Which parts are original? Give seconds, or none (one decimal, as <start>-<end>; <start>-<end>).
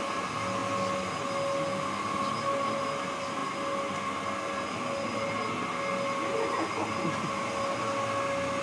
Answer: 0.0-8.6